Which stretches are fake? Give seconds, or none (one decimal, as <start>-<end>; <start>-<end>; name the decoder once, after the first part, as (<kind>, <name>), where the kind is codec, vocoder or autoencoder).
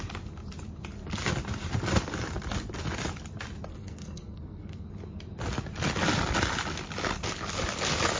3.7-4.9 (codec, SNAC)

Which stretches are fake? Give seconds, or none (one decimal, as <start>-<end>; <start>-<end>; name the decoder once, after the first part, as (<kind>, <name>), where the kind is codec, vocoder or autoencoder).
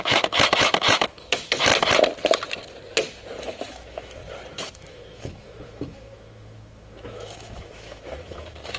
0.0-1.7 (autoencoder, DAC-VAE); 3.4-4.2; 4.7-8.8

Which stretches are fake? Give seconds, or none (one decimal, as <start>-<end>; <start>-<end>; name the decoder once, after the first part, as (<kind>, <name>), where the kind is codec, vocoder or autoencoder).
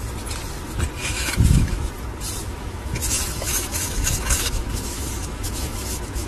1.0-1.9 (autoencoder, DAC-VAE); 2.4-6.3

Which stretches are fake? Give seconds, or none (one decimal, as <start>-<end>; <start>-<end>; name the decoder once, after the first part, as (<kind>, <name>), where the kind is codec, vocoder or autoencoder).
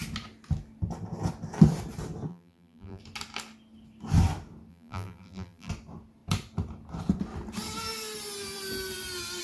2.3-3.0 (vocoder, BigVGAN v2); 4.7-5.7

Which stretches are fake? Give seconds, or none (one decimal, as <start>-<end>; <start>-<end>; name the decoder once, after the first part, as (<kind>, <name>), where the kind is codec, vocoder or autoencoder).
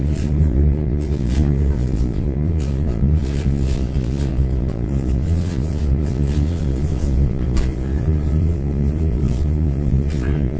0.0-10.6 (vocoder, Vocos)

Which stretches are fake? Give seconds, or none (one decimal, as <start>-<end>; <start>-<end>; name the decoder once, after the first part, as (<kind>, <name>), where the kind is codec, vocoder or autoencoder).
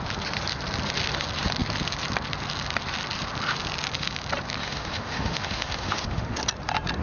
4.6-6.4 (autoencoder, DAC-VAE)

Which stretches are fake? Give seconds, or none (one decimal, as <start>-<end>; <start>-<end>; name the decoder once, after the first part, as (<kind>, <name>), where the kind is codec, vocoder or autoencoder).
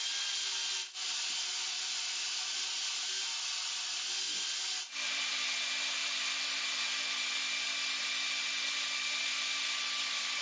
none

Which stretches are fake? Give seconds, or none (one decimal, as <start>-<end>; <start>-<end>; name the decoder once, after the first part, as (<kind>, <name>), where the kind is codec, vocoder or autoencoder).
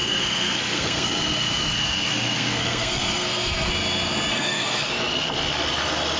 0.0-3.7 (codec, SNAC); 4.3-4.9